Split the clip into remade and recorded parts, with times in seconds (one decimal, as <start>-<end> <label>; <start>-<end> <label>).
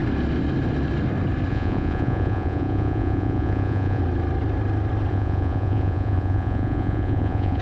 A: 0.0-1.5 recorded; 1.5-4.0 remade; 4.0-5.1 recorded; 5.1-7.6 remade